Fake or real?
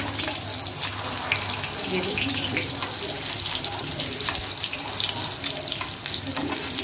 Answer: real